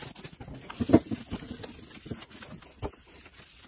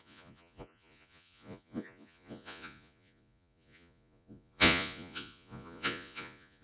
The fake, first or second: second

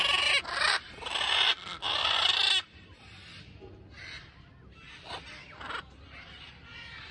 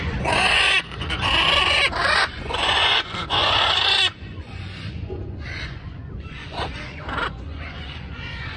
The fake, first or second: second